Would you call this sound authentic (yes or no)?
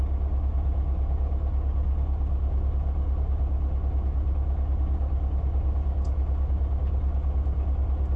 yes